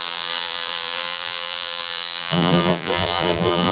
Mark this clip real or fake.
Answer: fake